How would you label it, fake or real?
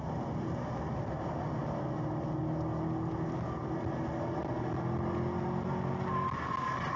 real